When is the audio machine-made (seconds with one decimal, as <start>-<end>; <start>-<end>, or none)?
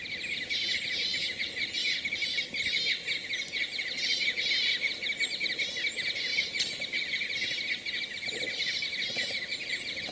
6.3-7.0